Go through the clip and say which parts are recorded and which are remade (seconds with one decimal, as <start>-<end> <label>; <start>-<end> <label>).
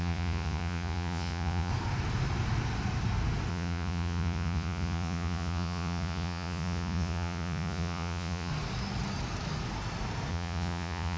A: 0.0-1.7 remade; 1.7-3.5 recorded; 3.5-8.5 remade; 8.5-10.3 recorded; 10.3-11.2 remade